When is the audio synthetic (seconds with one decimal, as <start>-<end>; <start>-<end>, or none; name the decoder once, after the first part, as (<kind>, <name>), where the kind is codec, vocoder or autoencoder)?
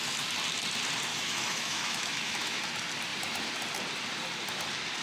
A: 1.1-2.6 (autoencoder, DAC-VAE)